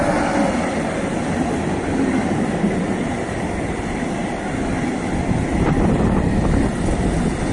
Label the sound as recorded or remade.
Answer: recorded